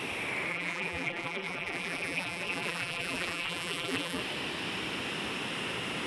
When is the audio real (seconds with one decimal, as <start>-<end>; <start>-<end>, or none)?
0.0-0.5; 4.2-6.1